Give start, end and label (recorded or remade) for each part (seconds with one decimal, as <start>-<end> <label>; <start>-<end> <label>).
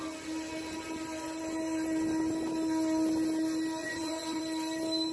0.0-3.8 recorded; 3.8-4.4 remade; 4.4-5.1 recorded